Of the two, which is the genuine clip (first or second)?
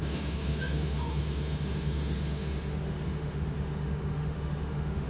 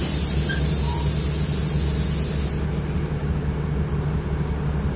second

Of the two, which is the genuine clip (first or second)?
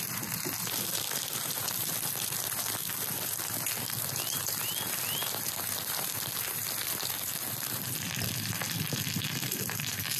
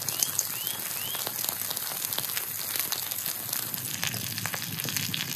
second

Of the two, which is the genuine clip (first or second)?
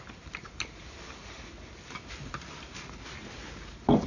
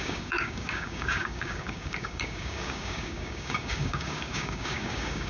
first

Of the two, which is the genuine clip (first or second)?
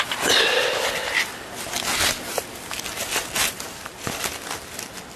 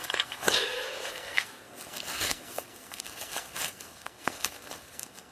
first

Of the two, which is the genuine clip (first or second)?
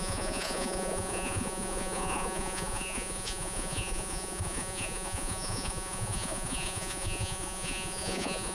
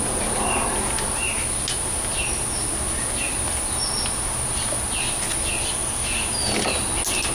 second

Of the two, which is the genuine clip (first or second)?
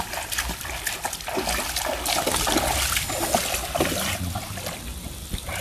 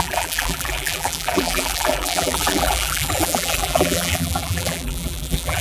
first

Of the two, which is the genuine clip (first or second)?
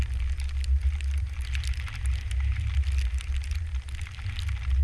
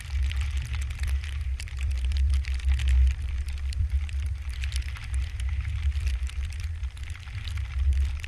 first